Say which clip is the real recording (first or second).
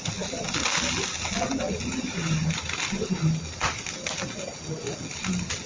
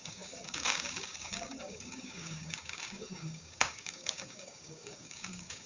first